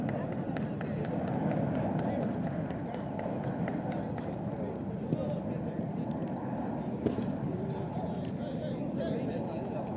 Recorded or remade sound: recorded